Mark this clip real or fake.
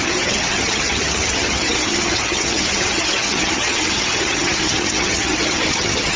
fake